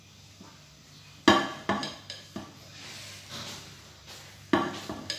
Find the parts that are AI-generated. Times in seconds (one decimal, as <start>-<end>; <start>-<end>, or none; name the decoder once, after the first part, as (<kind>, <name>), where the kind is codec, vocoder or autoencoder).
none

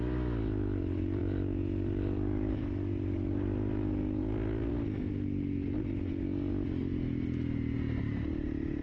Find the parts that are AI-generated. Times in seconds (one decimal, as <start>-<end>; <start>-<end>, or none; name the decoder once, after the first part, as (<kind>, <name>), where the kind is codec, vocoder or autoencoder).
none

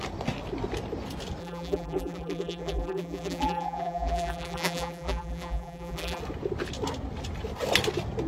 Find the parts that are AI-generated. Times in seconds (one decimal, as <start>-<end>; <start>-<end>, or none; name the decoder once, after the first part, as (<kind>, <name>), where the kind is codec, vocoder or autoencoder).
1.4-6.2 (vocoder, BigVGAN v2)

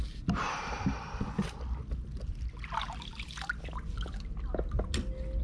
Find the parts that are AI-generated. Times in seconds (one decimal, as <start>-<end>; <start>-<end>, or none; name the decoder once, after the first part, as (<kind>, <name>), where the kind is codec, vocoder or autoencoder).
none

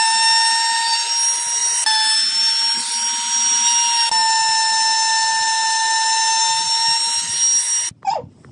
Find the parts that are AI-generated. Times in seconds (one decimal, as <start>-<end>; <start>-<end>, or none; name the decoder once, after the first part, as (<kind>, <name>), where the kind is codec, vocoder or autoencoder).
none

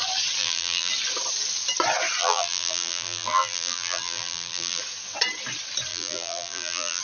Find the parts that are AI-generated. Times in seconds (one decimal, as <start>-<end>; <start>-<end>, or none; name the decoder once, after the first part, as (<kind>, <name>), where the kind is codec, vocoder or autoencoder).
0.4-0.9 (vocoder, BigVGAN v2); 2.2-4.8; 5.9-7.0

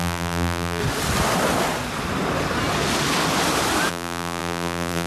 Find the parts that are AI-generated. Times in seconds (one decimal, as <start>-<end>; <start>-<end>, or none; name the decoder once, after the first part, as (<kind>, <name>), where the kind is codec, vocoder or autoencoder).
0.0-0.8 (vocoder, BigVGAN v2); 3.9-5.1

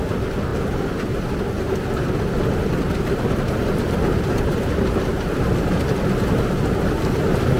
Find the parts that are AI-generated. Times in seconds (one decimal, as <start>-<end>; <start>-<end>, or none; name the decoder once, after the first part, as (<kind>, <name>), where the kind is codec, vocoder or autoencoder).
0.5-2.7 (vocoder, BigVGAN v2); 3.6-5.1